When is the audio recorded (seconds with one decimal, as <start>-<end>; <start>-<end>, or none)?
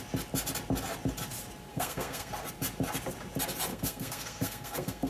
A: 0.0-1.7; 2.3-3.7